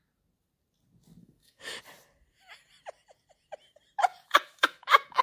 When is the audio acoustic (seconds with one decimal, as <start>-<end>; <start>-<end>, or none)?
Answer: 0.0-1.2; 1.8-4.1